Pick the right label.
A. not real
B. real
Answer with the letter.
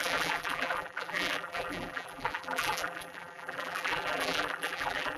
A